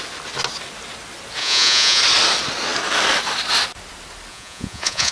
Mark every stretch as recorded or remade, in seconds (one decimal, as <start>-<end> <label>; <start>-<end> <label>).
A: 0.0-1.4 recorded; 1.4-2.0 remade; 2.0-4.3 recorded; 4.3-5.1 remade